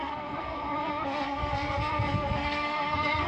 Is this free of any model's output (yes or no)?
no